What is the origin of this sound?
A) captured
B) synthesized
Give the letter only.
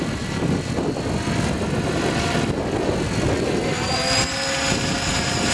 A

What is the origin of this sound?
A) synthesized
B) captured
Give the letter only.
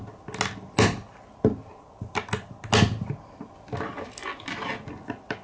B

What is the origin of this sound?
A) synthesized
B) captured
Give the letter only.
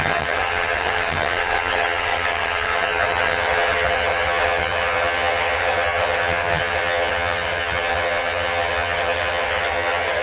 A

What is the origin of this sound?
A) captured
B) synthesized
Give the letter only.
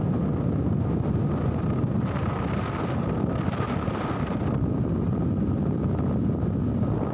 A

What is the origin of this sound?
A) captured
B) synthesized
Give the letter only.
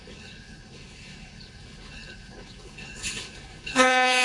B